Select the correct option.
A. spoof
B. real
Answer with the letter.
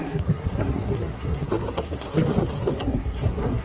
A